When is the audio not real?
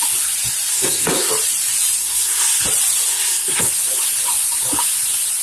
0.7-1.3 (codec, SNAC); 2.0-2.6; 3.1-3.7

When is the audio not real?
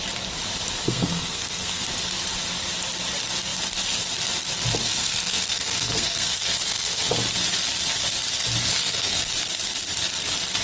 0.8-1.8 (codec, SNAC); 5.0-7.1; 8.7-9.3